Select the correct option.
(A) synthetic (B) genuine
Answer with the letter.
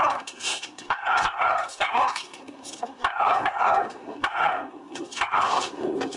A